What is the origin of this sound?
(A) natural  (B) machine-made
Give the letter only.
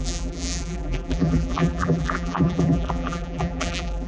B